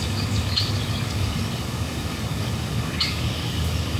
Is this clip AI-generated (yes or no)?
yes